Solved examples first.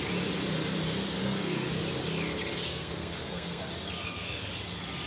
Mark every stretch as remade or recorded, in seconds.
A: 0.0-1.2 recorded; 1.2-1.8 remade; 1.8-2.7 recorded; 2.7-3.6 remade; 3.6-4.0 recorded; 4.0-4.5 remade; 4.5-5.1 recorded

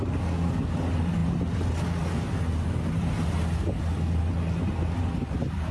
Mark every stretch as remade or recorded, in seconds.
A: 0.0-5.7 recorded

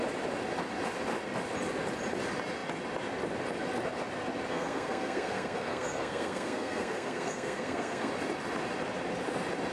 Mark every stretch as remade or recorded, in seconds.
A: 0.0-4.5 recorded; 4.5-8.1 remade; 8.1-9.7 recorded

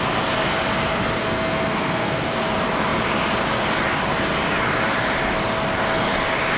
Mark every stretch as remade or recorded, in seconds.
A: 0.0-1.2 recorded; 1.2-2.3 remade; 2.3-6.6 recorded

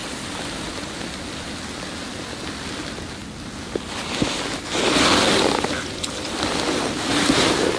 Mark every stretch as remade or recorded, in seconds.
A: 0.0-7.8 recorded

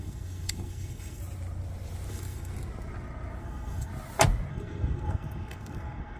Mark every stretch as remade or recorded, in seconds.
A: 0.0-1.2 remade; 1.2-2.1 recorded; 2.1-2.5 remade; 2.5-3.4 recorded; 3.4-3.9 remade; 3.9-4.5 recorded; 4.5-6.2 remade